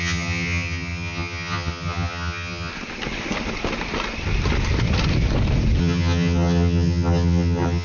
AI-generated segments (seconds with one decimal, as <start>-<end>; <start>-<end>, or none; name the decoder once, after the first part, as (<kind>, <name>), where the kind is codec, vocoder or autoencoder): 0.0-2.7 (vocoder, HiFi-GAN); 5.8-7.8